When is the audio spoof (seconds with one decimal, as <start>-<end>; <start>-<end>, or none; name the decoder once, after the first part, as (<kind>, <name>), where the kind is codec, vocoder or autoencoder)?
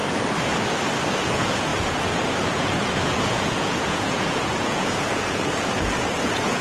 1.2-6.6 (vocoder, Vocos)